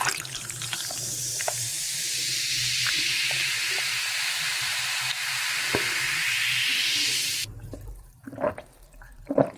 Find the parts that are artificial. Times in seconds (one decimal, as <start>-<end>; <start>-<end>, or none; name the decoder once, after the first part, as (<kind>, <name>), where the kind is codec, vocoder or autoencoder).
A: 0.0-1.7 (vocoder, BigVGAN v2); 2.5-9.6